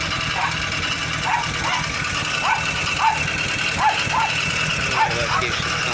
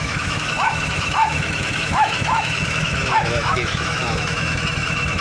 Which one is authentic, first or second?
first